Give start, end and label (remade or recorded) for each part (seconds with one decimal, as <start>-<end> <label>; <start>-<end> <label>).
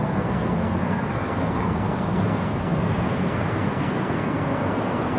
0.0-5.2 remade